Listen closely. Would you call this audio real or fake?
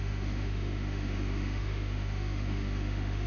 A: fake